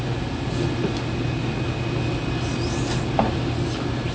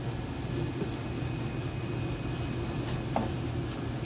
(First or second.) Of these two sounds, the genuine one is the first